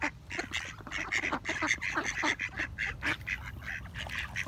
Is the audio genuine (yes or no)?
yes